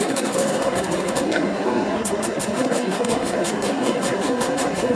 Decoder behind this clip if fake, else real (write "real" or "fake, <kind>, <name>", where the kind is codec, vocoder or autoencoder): fake, codec, SNAC